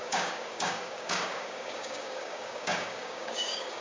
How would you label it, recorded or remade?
remade